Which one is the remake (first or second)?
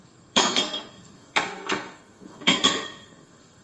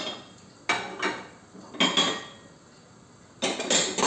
first